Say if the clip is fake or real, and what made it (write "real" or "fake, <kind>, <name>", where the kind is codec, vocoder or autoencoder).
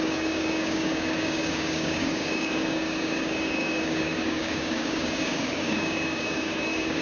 fake, codec, DAC